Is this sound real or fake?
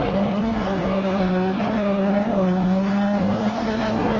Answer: fake